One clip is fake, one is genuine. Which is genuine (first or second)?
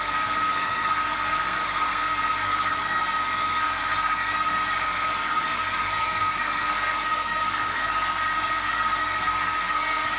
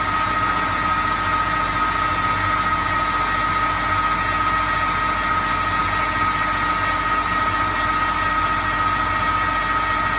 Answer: second